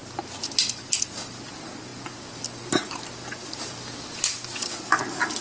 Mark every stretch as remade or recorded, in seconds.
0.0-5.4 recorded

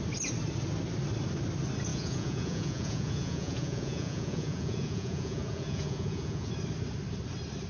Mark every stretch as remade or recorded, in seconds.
0.0-1.9 recorded; 1.9-6.5 remade; 6.5-7.7 recorded

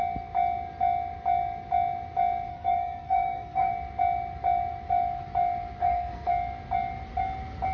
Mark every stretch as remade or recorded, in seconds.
0.0-2.5 recorded; 2.5-3.7 remade; 3.7-5.8 recorded; 5.8-6.3 remade; 6.3-7.7 recorded

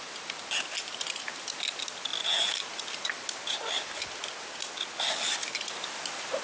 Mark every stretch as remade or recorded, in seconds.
0.0-6.4 recorded